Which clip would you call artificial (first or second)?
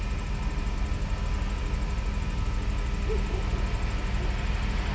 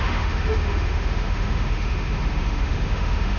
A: second